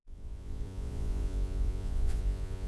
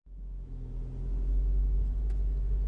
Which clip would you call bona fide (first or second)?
second